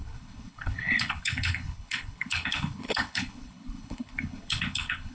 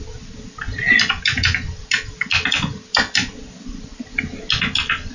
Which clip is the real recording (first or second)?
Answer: second